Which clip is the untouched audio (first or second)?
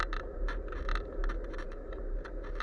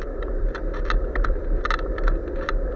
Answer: first